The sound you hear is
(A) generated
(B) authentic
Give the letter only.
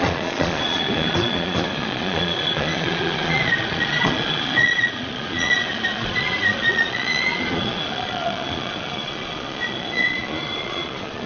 A